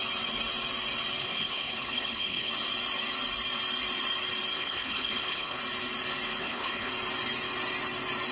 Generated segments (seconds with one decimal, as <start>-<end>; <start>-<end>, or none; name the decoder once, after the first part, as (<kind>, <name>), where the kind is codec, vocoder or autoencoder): 1.2-2.5 (codec, HILCodec); 4.5-5.6; 6.4-6.9